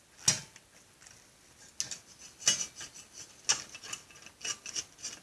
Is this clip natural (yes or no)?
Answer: yes